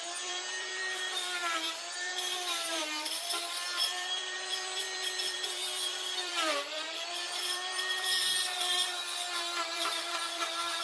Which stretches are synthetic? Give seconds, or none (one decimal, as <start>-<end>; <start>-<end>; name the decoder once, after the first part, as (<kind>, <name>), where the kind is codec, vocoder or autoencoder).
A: 0.0-10.8 (vocoder, BigVGAN v2)